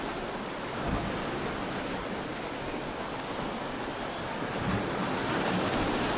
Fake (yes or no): no